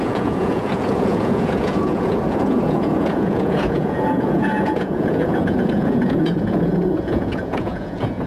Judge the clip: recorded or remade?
remade